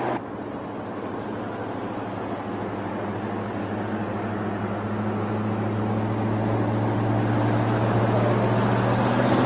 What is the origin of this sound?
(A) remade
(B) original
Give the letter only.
B